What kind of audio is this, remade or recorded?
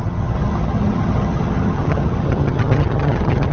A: remade